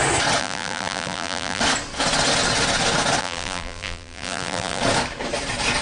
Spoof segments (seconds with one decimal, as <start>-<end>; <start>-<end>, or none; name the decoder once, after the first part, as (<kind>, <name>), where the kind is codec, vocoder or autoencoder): 0.4-1.6 (vocoder, BigVGAN v2); 3.2-4.8